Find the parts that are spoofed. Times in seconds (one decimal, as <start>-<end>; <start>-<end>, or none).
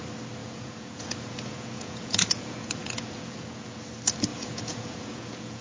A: 0.4-3.8; 4.3-5.6